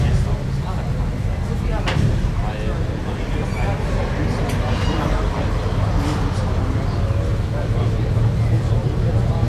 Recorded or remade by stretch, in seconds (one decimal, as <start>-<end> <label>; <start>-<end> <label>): 0.0-7.3 recorded; 7.3-9.5 remade